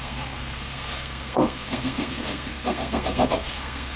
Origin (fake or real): fake